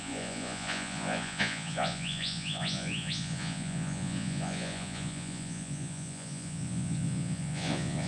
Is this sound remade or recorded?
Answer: remade